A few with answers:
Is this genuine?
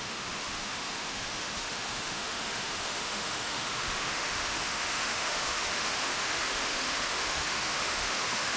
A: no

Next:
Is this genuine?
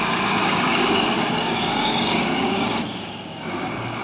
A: no